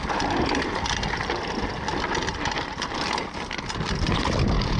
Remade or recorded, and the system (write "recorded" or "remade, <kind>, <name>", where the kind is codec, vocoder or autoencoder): recorded